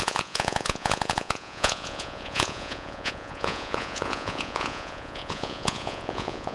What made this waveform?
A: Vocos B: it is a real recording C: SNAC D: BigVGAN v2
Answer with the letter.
A